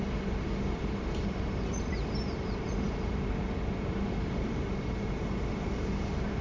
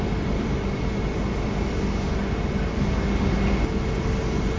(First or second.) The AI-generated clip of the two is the first